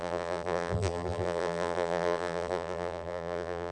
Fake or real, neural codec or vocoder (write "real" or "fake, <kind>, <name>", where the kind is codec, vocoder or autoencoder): fake, vocoder, BigVGAN v2